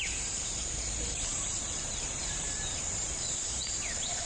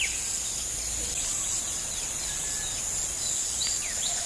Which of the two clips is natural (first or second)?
second